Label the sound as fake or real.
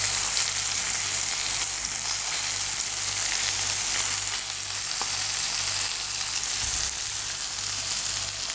real